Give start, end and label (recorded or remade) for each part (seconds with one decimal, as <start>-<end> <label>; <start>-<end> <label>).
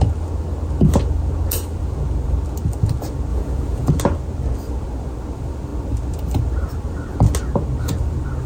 0.0-3.3 recorded; 3.3-3.9 remade; 3.9-8.5 recorded